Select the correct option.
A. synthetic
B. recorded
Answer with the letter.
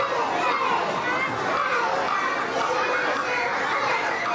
B